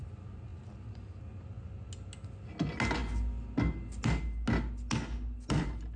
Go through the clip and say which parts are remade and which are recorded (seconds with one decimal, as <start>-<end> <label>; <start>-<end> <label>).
0.0-6.0 recorded